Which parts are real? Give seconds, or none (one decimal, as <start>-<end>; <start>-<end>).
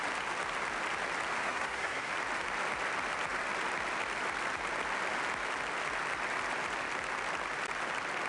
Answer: 0.0-1.4; 2.1-8.3